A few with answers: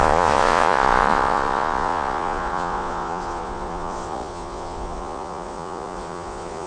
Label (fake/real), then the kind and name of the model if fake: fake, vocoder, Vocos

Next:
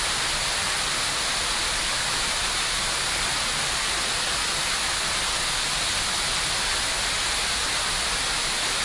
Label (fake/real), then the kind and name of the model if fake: real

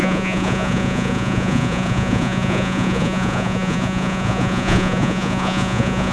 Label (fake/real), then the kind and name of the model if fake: fake, vocoder, Vocos